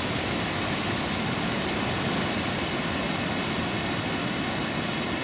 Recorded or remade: recorded